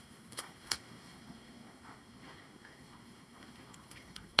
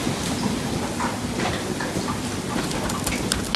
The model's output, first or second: first